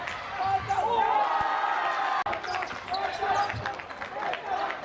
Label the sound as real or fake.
real